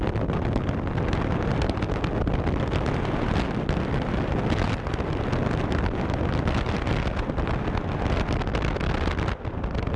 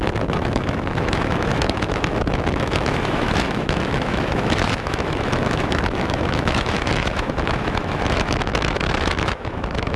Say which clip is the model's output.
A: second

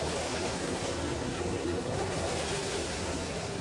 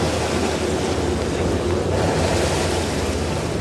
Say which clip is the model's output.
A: first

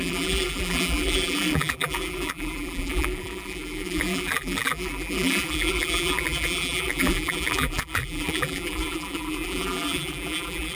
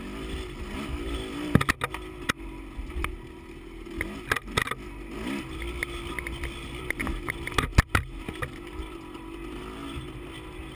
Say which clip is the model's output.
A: first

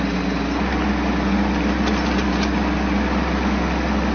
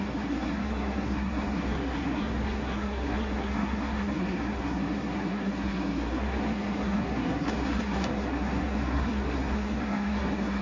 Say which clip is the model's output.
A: second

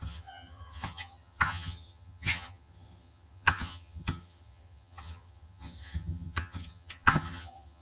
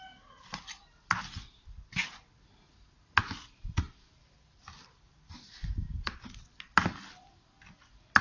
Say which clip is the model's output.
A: first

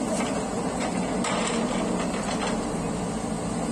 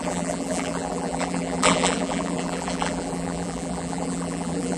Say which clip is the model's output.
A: second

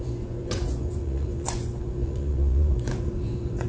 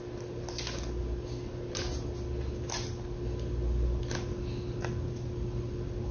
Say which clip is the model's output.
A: first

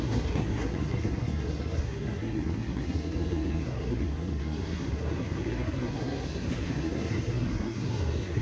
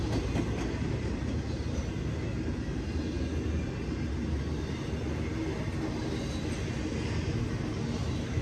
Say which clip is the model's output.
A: first